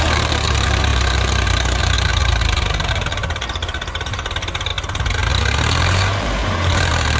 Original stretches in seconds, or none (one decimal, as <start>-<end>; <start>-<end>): 4.7-5.8